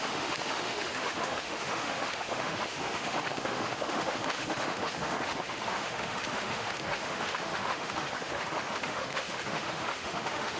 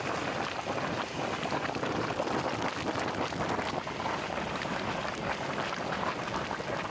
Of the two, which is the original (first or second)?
second